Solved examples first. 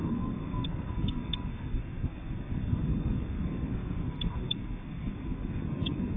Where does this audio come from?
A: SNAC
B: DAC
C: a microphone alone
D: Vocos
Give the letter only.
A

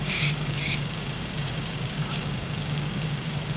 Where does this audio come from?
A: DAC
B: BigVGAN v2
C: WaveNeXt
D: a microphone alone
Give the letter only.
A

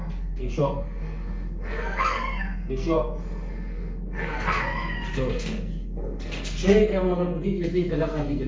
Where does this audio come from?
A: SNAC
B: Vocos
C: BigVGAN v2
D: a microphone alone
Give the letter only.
A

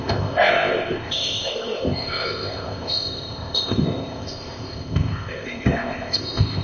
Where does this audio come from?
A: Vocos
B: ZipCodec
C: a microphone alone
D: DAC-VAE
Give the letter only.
B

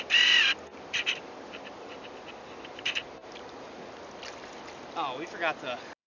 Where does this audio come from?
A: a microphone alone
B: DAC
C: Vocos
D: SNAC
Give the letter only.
A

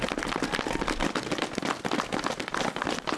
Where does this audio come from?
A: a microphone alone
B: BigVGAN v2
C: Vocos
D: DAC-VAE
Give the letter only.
A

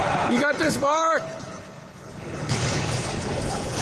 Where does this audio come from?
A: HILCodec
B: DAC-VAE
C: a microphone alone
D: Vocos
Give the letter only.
A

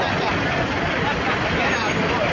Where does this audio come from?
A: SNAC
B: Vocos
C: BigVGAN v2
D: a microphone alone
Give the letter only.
D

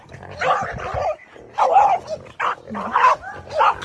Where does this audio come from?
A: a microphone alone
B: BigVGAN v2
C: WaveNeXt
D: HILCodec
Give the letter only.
A